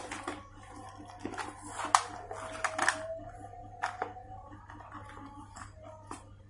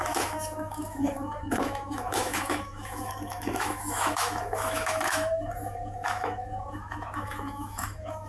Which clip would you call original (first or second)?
first